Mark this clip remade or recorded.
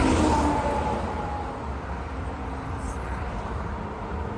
remade